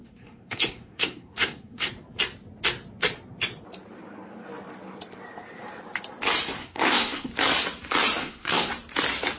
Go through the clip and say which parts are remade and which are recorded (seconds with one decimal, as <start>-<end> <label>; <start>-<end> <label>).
0.0-1.9 remade; 1.9-6.6 recorded; 6.6-7.3 remade; 7.3-8.2 recorded; 8.2-8.7 remade; 8.7-9.4 recorded

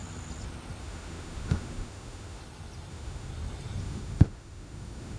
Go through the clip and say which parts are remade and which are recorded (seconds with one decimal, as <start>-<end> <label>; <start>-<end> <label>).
0.0-0.8 recorded; 0.8-2.4 remade; 2.4-2.9 recorded; 2.9-3.3 remade; 3.3-3.8 recorded; 3.8-5.2 remade

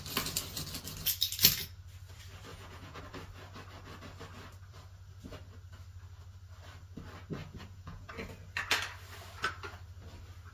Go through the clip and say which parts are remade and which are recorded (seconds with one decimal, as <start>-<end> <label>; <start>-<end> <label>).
0.0-2.5 recorded; 2.5-3.0 remade; 3.0-7.4 recorded; 7.4-8.1 remade; 8.1-10.5 recorded

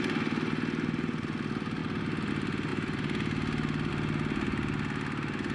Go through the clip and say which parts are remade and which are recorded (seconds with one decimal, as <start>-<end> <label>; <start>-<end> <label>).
0.0-5.5 recorded